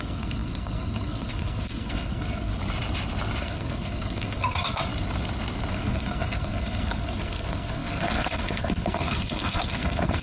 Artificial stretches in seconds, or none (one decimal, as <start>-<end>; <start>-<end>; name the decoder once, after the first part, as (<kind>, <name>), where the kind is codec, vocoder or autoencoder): 0.0-2.5 (codec, SNAC); 3.4-4.9; 5.7-10.2